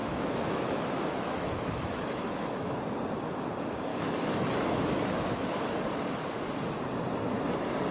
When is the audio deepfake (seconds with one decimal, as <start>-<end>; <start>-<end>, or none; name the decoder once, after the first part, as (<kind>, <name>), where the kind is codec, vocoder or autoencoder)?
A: 0.0-2.8 (autoencoder, DAC-VAE); 3.9-5.8